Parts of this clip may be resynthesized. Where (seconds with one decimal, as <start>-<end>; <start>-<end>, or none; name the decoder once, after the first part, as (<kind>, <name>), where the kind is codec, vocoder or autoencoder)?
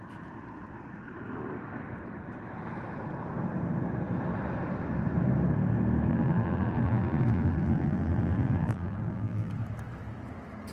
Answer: 6.1-9.5 (vocoder, BigVGAN v2)